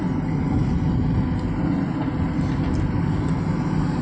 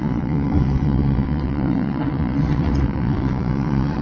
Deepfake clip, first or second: second